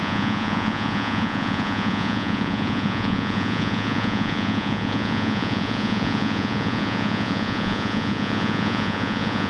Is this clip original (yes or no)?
no